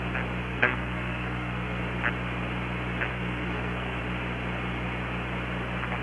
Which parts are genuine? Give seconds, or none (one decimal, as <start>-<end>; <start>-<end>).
0.0-0.4; 1.8-3.1; 4.0-6.0